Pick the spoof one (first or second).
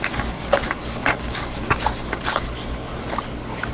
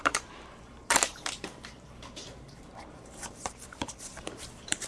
second